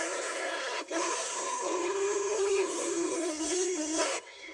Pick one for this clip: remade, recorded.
remade